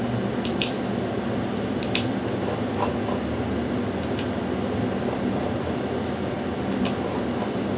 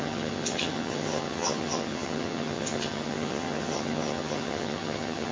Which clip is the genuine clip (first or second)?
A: first